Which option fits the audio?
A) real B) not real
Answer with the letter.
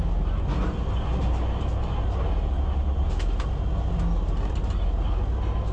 A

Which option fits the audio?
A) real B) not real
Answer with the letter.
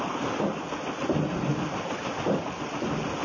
A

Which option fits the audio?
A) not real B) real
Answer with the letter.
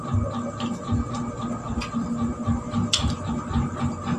B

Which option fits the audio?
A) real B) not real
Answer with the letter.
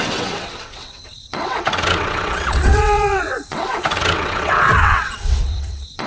B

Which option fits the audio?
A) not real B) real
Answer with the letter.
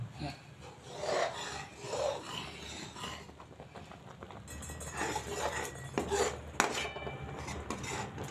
B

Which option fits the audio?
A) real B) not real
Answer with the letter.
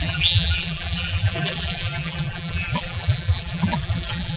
B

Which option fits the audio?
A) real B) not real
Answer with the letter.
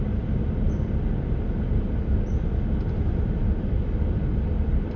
A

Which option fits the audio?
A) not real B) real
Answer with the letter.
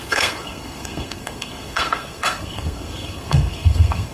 A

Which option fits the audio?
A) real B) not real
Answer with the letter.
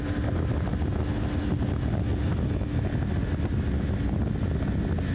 A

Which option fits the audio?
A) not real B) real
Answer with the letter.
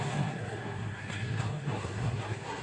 A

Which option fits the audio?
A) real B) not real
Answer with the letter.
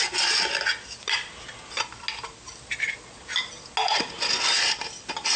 A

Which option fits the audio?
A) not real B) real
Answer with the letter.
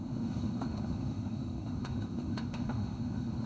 A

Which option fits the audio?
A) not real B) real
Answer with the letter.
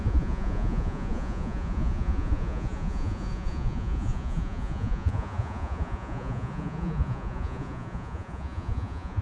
A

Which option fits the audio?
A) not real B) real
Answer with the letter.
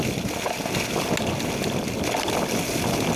B